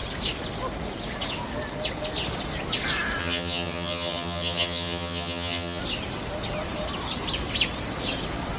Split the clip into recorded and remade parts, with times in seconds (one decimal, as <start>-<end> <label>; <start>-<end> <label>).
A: 0.0-3.2 recorded; 3.2-5.8 remade; 5.8-8.6 recorded